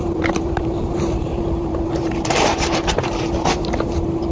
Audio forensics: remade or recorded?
remade